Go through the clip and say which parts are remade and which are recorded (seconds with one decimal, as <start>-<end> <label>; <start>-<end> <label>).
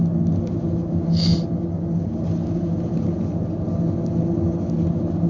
0.0-5.3 recorded